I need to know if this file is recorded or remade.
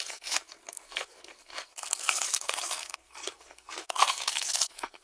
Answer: remade